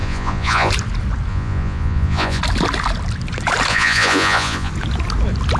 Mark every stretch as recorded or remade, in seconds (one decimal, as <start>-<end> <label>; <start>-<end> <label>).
0.0-0.7 remade; 0.7-1.3 recorded; 1.3-2.4 remade; 2.4-3.7 recorded; 3.7-4.7 remade; 4.7-5.6 recorded